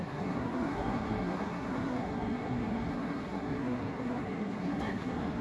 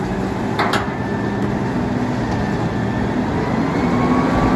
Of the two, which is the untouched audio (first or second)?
second